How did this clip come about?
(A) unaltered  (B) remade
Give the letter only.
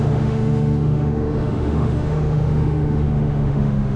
B